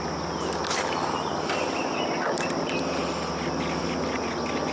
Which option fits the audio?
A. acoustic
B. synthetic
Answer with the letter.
A